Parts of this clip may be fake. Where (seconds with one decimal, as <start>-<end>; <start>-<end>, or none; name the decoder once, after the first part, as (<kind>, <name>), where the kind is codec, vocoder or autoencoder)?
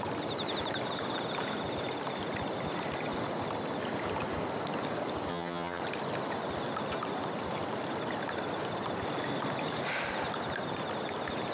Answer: 5.3-5.8 (vocoder, HiFi-GAN)